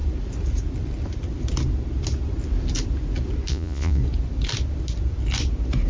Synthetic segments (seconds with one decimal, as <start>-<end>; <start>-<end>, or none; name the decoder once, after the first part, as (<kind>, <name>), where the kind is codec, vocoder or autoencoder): 3.5-4.0 (vocoder, Vocos)